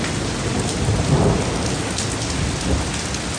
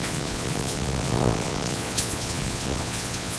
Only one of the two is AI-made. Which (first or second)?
second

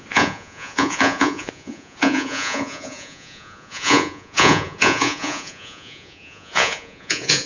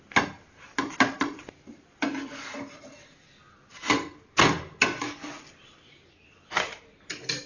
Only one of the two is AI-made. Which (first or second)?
first